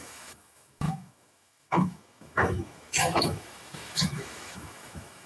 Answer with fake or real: fake